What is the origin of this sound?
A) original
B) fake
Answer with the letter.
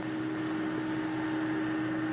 A